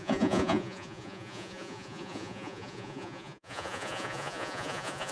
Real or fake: fake